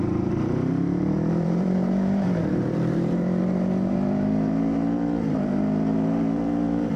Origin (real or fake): fake